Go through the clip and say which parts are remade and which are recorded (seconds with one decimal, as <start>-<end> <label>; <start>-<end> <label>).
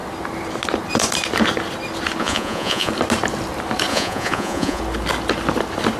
0.0-2.2 recorded; 2.2-2.9 remade; 2.9-3.9 recorded; 3.9-4.8 remade; 4.8-6.0 recorded